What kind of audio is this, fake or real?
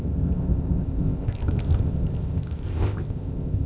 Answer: fake